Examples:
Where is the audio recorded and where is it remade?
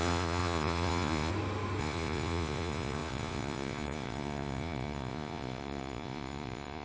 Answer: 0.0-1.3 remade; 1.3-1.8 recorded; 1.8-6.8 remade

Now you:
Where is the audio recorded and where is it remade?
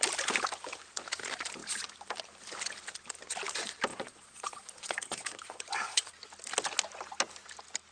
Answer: 0.0-3.9 recorded; 3.9-6.1 remade; 6.1-7.9 recorded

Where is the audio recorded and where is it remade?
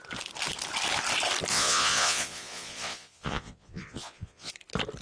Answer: 0.0-1.5 recorded; 1.5-4.5 remade; 4.5-5.0 recorded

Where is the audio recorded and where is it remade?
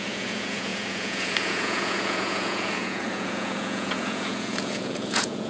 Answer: 0.0-5.5 remade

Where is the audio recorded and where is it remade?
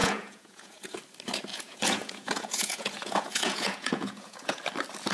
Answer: 0.0-1.0 remade; 1.0-1.5 recorded; 1.5-4.6 remade; 4.6-5.1 recorded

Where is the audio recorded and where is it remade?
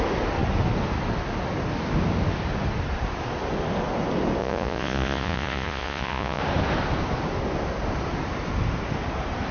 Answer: 0.0-4.4 recorded; 4.4-6.4 remade; 6.4-9.5 recorded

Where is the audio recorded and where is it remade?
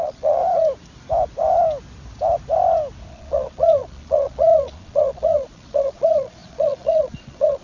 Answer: 0.0-0.4 remade; 0.4-3.1 recorded; 3.1-7.6 remade